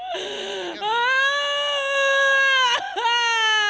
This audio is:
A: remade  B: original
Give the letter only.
B